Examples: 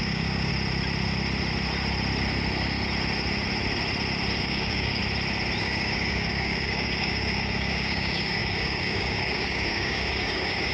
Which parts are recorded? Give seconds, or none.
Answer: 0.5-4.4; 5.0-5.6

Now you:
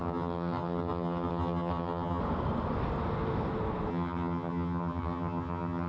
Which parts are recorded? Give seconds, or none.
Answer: 2.2-3.9

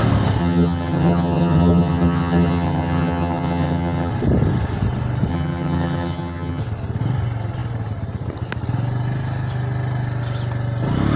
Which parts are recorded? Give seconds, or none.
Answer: 0.0-0.4; 4.1-5.3; 6.6-11.2

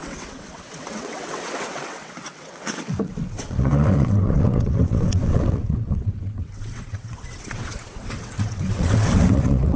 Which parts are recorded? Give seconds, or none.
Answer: none

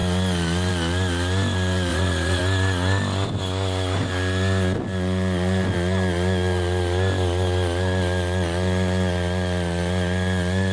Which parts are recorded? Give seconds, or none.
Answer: 0.0-1.9; 2.4-10.7

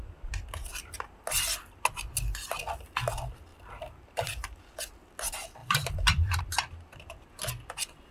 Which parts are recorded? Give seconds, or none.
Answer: 0.0-3.5; 4.9-5.6; 6.4-8.1

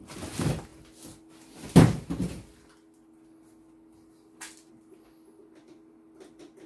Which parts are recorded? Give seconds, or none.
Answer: 0.0-6.7

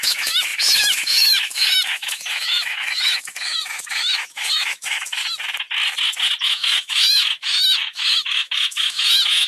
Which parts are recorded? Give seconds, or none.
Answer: 5.2-6.4